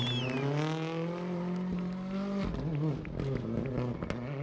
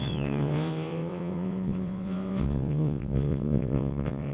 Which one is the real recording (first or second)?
first